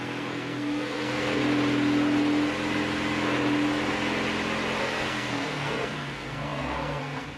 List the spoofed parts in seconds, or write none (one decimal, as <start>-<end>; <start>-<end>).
0.0-1.4; 4.8-7.4